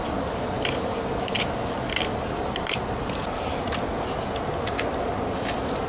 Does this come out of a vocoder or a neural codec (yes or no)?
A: no